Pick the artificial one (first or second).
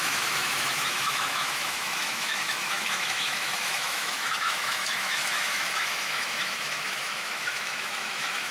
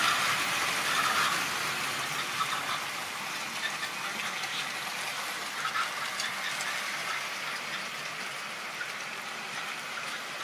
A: first